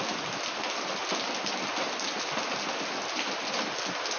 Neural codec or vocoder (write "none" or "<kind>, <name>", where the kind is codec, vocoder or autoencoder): none